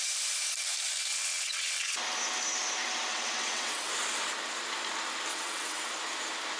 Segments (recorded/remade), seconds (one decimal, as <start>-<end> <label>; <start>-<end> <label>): 0.0-1.1 recorded; 1.1-2.0 remade; 2.0-3.1 recorded; 3.1-3.9 remade; 3.9-5.3 recorded; 5.3-5.9 remade; 5.9-6.6 recorded